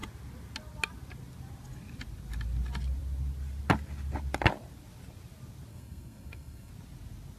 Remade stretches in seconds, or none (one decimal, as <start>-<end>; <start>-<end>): 5.7-6.7